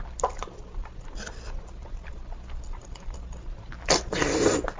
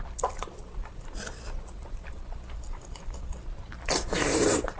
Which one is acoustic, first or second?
first